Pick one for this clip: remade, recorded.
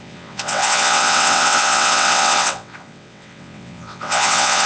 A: remade